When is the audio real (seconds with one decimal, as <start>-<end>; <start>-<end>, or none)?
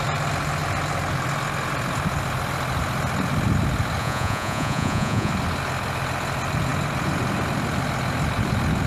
0.0-4.0; 5.3-8.9